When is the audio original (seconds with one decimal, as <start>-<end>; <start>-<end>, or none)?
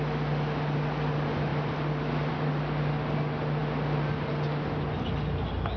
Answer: 0.0-5.8